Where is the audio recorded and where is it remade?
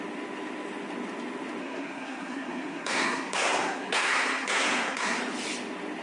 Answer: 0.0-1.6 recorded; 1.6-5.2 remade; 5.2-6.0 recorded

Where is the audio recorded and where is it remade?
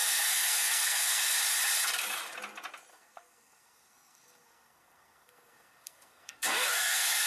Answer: 0.0-1.4 remade; 1.4-2.9 recorded; 2.9-7.3 remade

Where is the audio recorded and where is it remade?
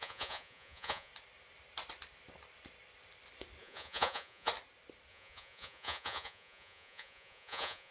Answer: 0.0-1.1 remade; 1.1-3.6 recorded; 3.6-4.5 remade; 4.5-5.1 recorded; 5.1-7.9 remade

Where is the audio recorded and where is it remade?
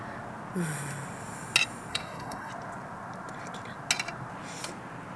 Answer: 0.0-1.9 recorded; 1.9-2.5 remade; 2.5-5.2 recorded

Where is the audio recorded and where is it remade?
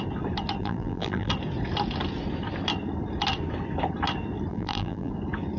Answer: 0.0-0.6 recorded; 0.6-1.3 remade; 1.3-4.5 recorded; 4.5-5.1 remade; 5.1-5.6 recorded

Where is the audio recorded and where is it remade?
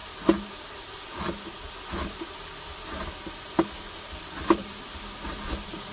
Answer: 0.0-5.9 recorded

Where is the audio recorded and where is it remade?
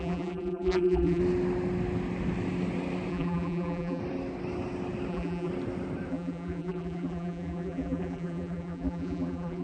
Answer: 0.0-1.2 remade; 1.2-3.1 recorded; 3.1-4.0 remade; 4.0-5.1 recorded; 5.1-5.5 remade; 5.5-6.1 recorded; 6.1-9.6 remade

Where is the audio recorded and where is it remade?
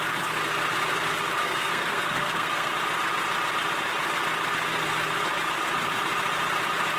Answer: 0.0-1.4 recorded; 1.4-2.7 remade; 2.7-7.0 recorded